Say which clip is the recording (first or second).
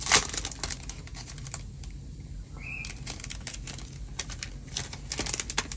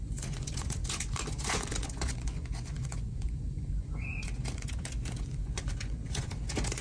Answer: first